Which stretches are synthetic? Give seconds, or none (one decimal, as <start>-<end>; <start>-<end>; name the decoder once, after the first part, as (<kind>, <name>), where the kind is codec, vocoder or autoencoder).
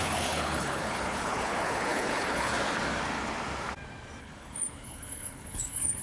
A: 0.0-2.5 (codec, HILCodec); 4.2-6.0